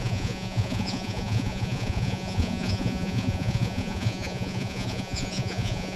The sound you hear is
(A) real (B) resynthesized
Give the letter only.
B